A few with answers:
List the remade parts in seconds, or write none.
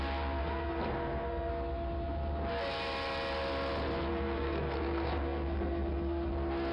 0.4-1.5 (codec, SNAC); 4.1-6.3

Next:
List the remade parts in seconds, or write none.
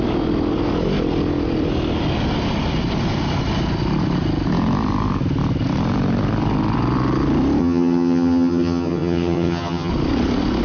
7.6-9.9 (vocoder, HiFi-GAN)